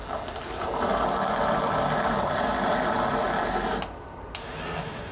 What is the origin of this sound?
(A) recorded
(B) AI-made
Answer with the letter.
A